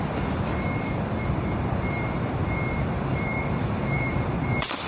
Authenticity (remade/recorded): remade